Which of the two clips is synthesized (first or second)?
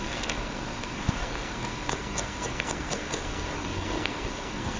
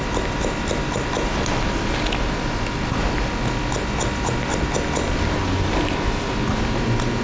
first